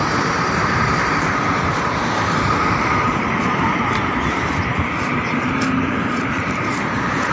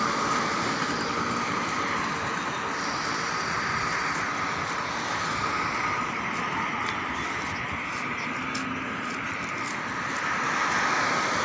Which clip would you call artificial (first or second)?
first